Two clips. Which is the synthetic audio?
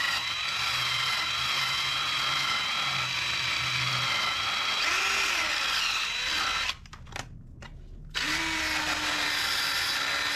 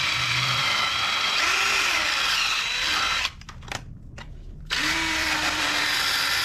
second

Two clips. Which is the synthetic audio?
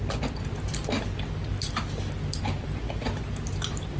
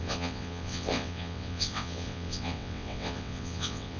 second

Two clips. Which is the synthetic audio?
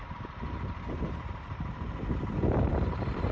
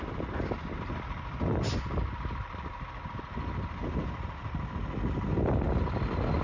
first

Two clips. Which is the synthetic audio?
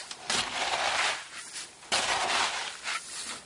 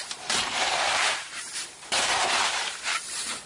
second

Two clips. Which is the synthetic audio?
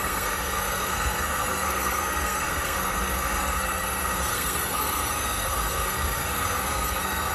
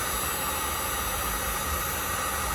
first